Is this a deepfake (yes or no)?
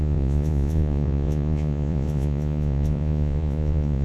yes